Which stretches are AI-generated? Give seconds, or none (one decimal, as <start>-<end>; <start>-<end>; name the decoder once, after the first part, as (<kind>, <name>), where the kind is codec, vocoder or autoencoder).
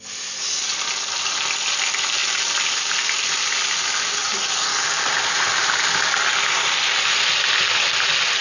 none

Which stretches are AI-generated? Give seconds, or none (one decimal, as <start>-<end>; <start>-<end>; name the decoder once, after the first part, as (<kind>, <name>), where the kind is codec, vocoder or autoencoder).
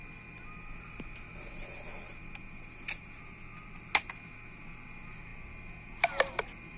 none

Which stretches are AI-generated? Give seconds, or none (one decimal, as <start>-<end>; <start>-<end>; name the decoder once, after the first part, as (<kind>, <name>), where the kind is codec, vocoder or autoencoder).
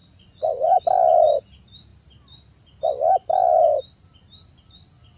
0.0-0.8 (vocoder, Vocos)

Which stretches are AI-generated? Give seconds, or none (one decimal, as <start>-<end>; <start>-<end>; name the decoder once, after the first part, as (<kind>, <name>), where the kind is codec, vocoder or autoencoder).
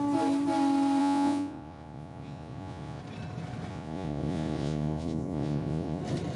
1.0-3.0 (vocoder, Vocos); 3.7-6.0